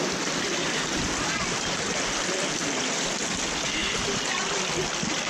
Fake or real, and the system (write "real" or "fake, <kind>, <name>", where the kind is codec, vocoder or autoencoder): real